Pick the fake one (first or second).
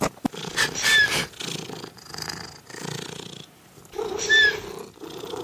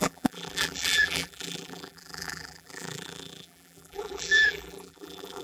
second